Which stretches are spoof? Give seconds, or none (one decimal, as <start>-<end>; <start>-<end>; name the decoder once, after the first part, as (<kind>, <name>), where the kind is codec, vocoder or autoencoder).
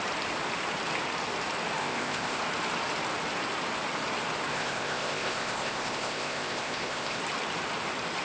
1.8-2.4 (codec, ZipCodec); 4.5-7.2